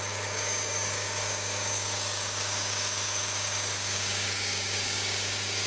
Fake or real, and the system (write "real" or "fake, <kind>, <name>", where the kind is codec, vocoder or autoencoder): fake, codec, DAC